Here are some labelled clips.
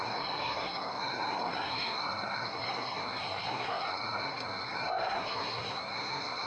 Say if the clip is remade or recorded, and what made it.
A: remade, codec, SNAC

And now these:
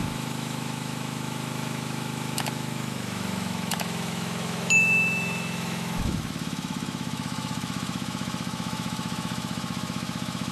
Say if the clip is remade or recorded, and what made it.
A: remade, autoencoder, DAC-VAE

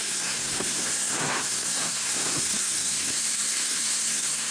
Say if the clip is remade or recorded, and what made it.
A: remade, codec, SNAC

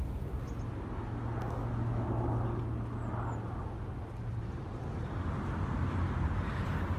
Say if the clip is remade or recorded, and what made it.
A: recorded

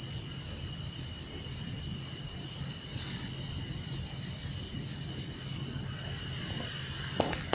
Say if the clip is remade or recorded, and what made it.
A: recorded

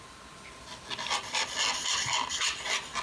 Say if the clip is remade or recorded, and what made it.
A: recorded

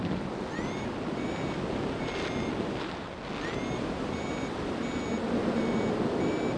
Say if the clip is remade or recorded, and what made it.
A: recorded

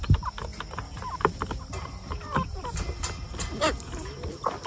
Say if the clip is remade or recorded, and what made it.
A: recorded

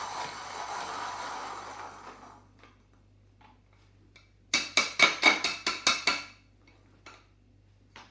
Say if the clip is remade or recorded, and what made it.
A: recorded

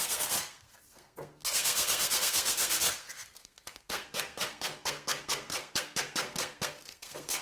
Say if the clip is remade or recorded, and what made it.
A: remade, codec, SNAC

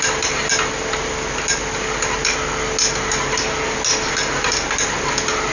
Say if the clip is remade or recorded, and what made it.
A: recorded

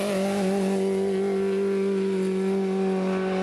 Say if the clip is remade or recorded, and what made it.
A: recorded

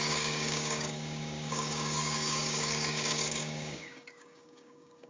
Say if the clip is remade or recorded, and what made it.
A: remade, codec, DAC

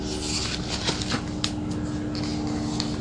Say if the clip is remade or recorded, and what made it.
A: recorded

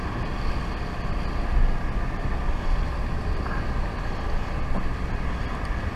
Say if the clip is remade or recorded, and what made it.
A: recorded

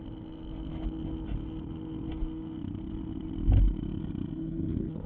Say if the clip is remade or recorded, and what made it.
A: recorded